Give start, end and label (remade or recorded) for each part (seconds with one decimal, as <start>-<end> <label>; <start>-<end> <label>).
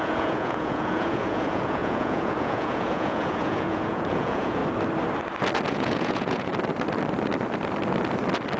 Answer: 0.0-4.6 remade; 4.6-5.7 recorded; 5.7-6.5 remade; 6.5-8.6 recorded